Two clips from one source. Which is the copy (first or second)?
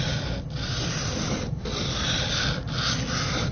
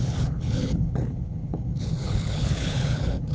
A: second